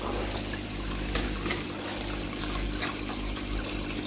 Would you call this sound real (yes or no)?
yes